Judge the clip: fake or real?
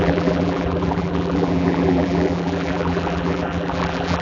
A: fake